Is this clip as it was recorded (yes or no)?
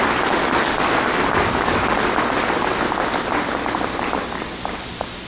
yes